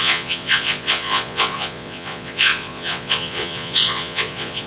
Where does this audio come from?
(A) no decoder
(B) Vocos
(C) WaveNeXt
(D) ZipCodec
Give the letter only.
B